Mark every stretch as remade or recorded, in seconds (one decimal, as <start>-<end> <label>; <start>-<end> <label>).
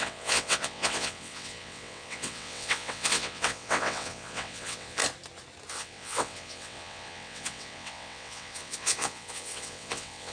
0.0-5.0 remade; 5.0-5.7 recorded; 5.7-10.3 remade